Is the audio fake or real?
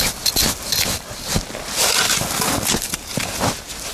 real